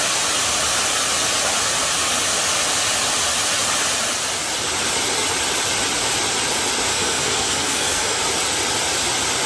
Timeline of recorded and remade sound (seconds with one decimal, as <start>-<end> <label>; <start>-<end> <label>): 0.0-6.9 recorded; 6.9-8.2 remade; 8.2-9.5 recorded